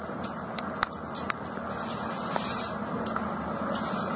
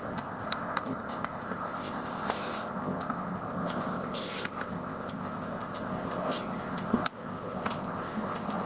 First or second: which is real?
first